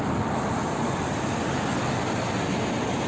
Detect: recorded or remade recorded